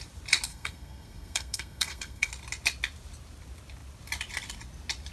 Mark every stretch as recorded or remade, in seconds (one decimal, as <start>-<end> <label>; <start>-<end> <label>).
0.0-0.5 recorded; 0.5-2.3 remade; 2.3-5.1 recorded